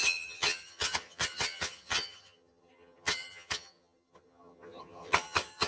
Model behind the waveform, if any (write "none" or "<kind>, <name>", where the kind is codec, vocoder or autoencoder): vocoder, HiFi-GAN